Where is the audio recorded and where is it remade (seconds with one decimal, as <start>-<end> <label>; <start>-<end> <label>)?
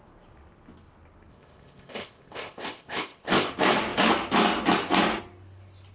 0.0-1.3 recorded; 1.3-3.5 remade; 3.5-5.9 recorded